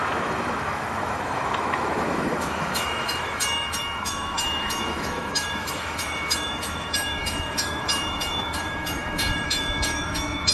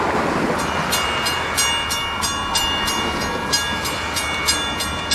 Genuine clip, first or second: second